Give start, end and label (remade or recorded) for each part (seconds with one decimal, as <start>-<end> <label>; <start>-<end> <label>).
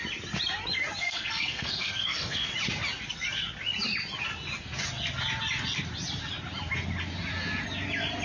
0.0-1.0 recorded; 1.0-2.5 remade; 2.5-8.2 recorded